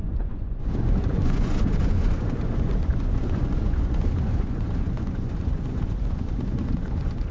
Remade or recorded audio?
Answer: remade